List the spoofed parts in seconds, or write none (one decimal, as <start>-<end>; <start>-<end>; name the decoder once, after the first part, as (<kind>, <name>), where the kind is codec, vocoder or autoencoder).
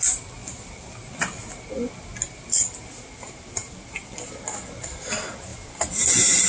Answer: none